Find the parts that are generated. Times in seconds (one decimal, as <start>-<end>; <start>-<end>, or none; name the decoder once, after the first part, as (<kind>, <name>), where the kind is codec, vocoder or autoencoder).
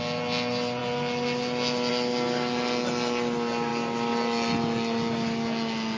none